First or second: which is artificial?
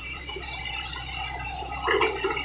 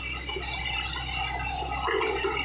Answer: first